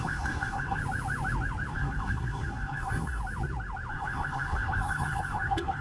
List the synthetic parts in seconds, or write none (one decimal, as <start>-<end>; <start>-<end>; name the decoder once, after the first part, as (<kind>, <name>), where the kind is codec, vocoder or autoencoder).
0.0-0.8 (codec, SNAC); 1.7-3.2; 3.9-5.8